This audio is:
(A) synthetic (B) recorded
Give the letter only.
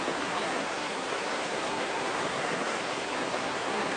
A